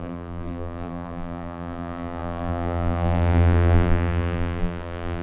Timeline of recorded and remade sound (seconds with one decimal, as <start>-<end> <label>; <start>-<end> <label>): 0.0-5.2 remade